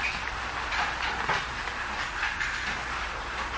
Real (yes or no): yes